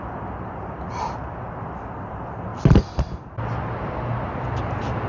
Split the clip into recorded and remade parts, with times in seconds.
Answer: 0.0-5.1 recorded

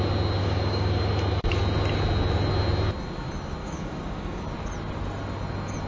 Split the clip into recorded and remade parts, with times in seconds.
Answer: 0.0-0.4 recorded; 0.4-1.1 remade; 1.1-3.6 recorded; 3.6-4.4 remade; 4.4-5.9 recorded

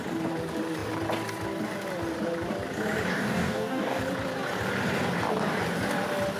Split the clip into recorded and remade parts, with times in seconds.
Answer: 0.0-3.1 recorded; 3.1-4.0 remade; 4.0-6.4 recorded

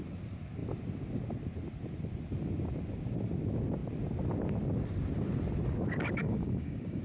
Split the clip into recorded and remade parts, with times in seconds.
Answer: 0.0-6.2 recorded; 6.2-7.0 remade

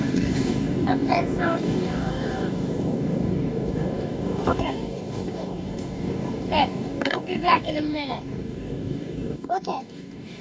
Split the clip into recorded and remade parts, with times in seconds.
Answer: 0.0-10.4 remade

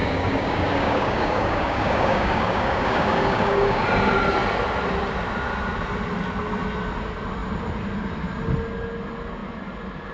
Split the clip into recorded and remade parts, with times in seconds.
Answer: 0.0-3.8 remade; 3.8-10.1 recorded

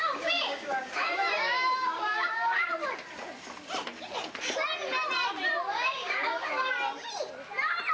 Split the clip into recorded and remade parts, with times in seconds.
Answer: 0.0-2.7 remade; 2.7-5.7 recorded; 5.7-6.7 remade; 6.7-7.9 recorded